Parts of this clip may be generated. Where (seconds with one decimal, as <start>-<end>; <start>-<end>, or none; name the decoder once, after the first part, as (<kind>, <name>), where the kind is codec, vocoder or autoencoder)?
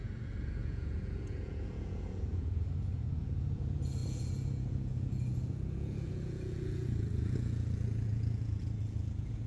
0.0-9.5 (vocoder, Vocos)